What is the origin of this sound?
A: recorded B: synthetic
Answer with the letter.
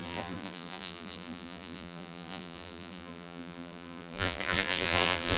B